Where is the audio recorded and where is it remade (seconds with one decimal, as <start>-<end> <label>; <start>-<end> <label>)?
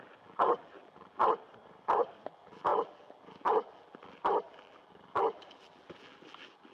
0.0-1.2 remade; 1.2-2.2 recorded; 2.2-6.7 remade